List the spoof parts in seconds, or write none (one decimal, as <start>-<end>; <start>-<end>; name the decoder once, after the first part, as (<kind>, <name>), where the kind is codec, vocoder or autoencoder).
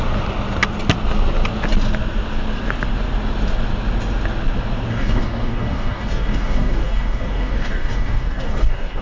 4.9-9.0 (codec, DAC)